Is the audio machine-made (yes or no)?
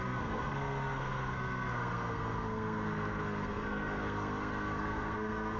yes